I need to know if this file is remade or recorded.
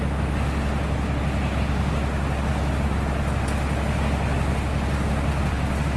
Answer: recorded